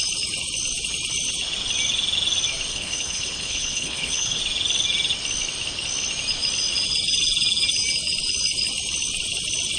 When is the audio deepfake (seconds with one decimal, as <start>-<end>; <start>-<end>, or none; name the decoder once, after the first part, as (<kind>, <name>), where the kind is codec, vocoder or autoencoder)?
2.7-4.4 (codec, HILCodec)